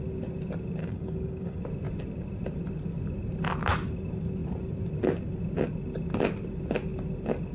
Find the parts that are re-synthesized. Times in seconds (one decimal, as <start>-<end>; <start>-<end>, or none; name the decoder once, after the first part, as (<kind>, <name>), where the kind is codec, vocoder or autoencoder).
0.8-1.6 (codec, DAC)